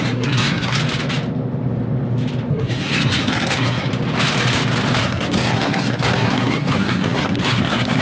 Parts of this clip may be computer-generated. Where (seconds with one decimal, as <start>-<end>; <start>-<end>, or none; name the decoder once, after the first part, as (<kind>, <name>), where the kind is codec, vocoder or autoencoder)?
0.0-0.8 (codec, SNAC); 2.5-3.9; 5.0-8.0